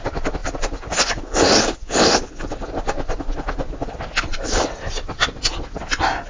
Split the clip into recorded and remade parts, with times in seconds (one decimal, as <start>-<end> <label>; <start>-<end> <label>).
0.0-0.4 recorded; 0.4-2.5 remade; 2.5-4.3 recorded; 4.3-5.8 remade; 5.8-6.3 recorded